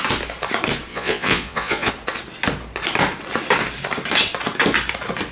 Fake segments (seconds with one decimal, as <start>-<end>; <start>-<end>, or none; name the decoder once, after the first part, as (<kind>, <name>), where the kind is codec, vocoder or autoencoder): 0.9-1.9 (vocoder, Vocos)